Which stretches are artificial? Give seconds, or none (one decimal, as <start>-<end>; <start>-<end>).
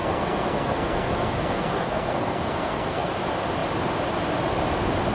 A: 0.0-3.1